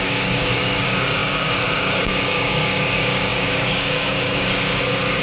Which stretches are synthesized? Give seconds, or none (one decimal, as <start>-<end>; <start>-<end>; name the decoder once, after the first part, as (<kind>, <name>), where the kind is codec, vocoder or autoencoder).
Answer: 0.0-5.2 (codec, DAC)